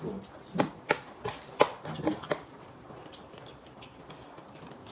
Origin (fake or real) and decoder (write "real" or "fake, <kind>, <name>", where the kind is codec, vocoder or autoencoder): real